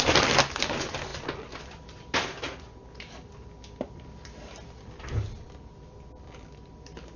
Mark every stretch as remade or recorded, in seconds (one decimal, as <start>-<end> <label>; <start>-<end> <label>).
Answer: 0.0-7.2 recorded